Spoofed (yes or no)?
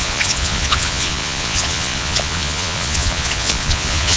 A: yes